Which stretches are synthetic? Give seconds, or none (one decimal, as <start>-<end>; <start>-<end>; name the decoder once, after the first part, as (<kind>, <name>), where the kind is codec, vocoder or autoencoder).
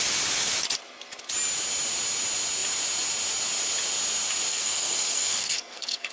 4.5-6.1 (codec, SNAC)